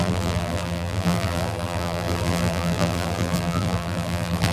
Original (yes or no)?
no